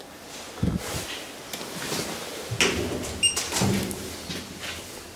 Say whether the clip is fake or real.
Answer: real